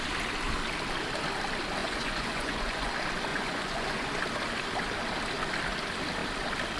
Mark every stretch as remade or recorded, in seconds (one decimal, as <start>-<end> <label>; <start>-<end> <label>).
0.0-1.8 recorded; 1.8-2.9 remade; 2.9-3.3 recorded; 3.3-4.1 remade; 4.1-6.8 recorded